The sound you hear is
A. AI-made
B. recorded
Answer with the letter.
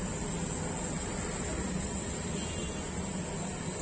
B